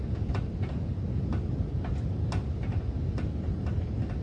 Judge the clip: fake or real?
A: real